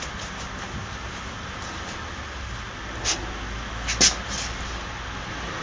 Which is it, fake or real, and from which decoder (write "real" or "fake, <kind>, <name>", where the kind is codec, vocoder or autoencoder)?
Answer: real